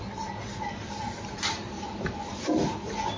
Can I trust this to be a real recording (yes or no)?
yes